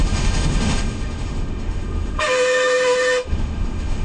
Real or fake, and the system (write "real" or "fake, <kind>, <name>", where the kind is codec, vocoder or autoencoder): fake, autoencoder, DAC-VAE